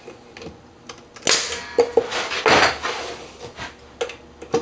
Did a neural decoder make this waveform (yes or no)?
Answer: no